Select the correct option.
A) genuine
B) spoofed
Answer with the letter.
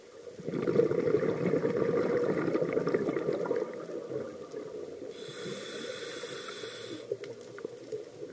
A